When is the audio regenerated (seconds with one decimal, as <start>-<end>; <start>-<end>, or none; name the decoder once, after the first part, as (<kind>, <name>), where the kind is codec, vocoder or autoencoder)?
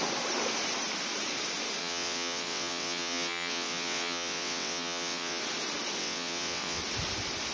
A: 1.8-5.4 (vocoder, WaveNeXt); 6.0-6.8